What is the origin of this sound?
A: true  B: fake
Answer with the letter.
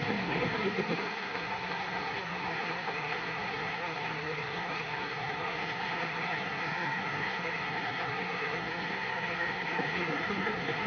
B